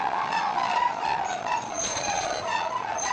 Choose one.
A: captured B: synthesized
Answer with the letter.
B